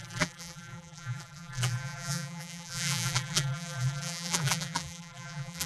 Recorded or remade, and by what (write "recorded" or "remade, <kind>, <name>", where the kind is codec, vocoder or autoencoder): remade, vocoder, BigVGAN v2